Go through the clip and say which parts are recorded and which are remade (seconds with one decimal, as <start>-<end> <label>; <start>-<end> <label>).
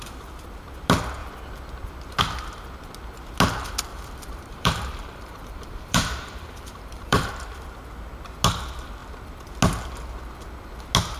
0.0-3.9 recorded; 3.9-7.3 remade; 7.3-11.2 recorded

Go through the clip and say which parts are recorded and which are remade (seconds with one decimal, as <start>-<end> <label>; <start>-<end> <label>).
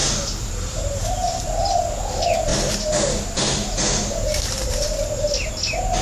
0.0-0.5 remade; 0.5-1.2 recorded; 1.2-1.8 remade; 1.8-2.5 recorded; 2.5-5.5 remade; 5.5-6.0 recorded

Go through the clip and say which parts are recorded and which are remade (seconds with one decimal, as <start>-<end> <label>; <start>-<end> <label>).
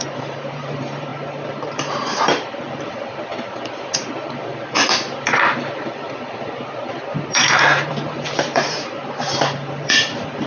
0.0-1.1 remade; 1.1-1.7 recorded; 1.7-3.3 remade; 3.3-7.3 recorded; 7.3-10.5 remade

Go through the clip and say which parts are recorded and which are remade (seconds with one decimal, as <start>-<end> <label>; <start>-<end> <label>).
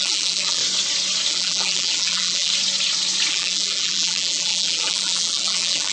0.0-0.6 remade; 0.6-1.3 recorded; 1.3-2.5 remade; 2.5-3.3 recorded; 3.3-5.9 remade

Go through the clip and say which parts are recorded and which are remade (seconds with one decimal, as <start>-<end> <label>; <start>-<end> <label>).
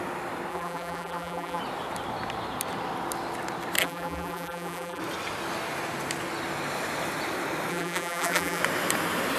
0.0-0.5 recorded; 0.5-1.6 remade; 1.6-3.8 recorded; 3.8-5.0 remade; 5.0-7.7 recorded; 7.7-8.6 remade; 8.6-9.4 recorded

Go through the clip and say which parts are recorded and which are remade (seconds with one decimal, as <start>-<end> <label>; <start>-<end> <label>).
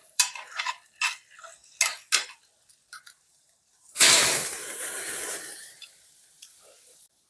0.0-0.6 remade; 0.6-2.8 recorded; 2.8-7.3 remade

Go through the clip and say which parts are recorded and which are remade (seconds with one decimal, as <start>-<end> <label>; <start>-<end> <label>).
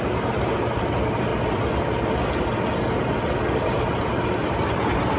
0.0-4.4 recorded; 4.4-5.2 remade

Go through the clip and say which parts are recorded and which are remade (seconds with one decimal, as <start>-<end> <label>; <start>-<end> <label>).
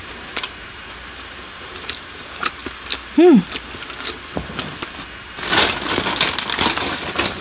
0.0-2.6 remade; 2.6-6.7 recorded; 6.7-7.4 remade